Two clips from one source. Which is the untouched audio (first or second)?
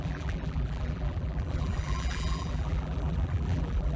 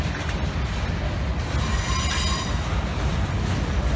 second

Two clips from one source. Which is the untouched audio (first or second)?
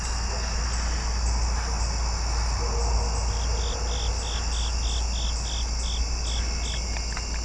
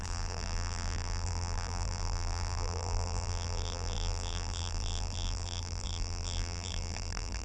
first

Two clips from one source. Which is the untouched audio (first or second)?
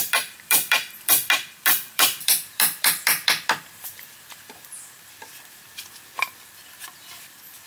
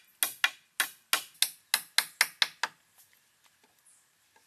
second